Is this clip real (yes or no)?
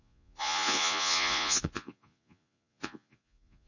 no